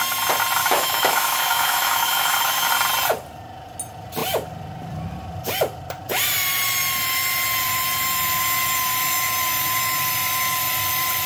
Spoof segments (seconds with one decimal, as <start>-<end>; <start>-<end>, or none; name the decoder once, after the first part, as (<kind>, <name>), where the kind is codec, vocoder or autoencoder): 0.6-2.7 (autoencoder, DAC-VAE)